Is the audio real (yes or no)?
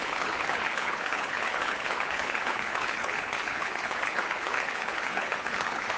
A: no